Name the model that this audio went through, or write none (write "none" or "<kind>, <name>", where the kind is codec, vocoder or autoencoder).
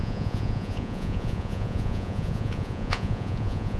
vocoder, Vocos